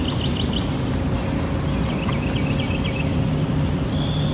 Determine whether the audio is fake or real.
real